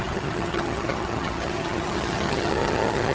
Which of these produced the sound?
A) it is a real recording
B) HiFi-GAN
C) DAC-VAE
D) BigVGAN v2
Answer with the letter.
B